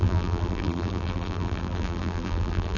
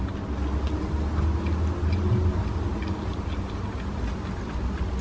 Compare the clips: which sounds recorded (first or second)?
second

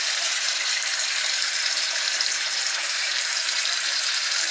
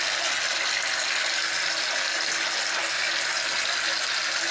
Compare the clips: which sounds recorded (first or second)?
second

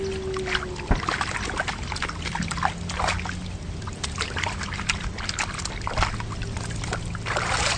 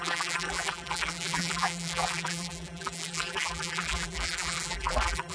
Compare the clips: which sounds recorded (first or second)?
first